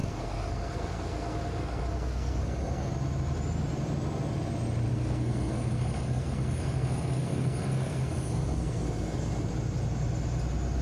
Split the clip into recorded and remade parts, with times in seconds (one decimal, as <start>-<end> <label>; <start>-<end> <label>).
0.0-2.9 remade; 2.9-4.9 recorded; 4.9-9.5 remade; 9.5-10.8 recorded